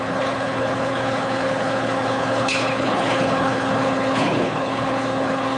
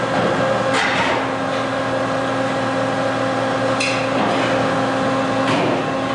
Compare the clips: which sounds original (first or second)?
second